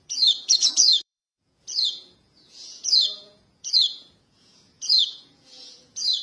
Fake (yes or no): yes